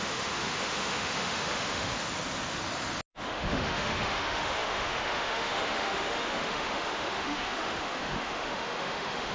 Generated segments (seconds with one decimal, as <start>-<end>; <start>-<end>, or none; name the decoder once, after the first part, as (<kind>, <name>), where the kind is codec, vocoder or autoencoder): 0.0-1.9 (autoencoder, DAC-VAE); 3.1-9.3

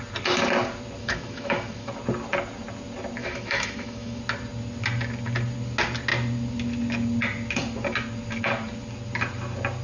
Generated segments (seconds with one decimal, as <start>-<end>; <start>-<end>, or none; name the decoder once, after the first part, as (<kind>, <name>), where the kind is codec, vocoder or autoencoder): 1.0-1.9 (autoencoder, DAC-VAE); 3.2-4.2

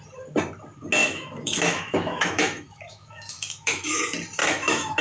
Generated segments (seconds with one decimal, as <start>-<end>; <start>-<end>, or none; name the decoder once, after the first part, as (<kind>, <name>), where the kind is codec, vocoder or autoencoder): 1.0-4.0 (autoencoder, DAC-VAE); 4.4-5.0

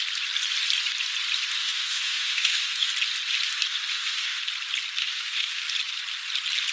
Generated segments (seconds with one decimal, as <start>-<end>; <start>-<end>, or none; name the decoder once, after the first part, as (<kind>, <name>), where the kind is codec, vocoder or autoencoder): 1.6-2.9 (autoencoder, DAC-VAE); 3.9-4.4; 5.0-5.6

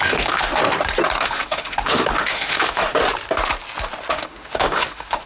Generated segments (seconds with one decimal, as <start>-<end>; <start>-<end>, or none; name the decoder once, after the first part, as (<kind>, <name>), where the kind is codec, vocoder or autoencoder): 0.0-0.6 (autoencoder, DAC-VAE); 1.2-3.0; 4.1-5.3